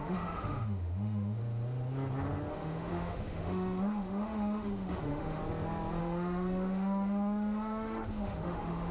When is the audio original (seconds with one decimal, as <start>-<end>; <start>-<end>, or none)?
1.4-2.5; 5.4-6.0